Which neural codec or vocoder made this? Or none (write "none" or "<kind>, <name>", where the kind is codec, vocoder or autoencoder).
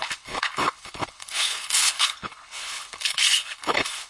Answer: codec, HILCodec